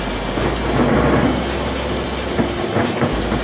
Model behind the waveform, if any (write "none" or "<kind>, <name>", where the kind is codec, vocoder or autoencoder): none